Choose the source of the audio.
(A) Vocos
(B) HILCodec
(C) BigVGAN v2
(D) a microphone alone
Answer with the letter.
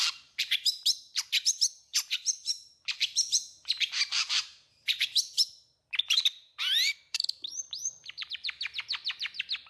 C